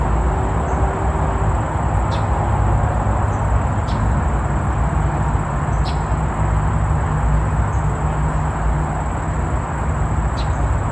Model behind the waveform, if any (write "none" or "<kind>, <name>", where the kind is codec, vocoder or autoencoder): none